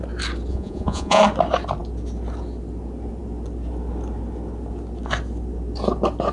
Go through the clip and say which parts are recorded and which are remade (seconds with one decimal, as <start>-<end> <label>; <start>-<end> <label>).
0.0-0.5 recorded; 0.5-1.2 remade; 1.2-6.3 recorded